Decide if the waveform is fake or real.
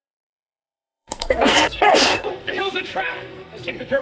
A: fake